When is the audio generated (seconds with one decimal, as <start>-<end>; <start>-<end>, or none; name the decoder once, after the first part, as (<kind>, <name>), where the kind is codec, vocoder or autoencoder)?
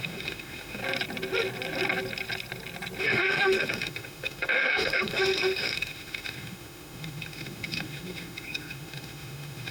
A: 0.0-0.8 (autoencoder, DAC-VAE); 3.0-9.7